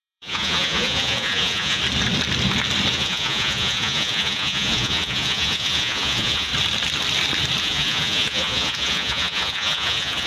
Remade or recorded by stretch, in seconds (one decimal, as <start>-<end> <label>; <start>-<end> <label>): 0.0-1.8 remade; 1.8-2.9 recorded; 2.9-6.5 remade; 6.5-7.6 recorded; 7.6-10.3 remade